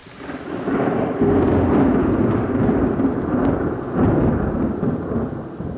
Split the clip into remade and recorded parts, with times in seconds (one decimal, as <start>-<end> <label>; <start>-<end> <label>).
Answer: 0.0-5.8 recorded